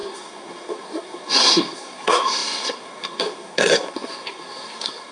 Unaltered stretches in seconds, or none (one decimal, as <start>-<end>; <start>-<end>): none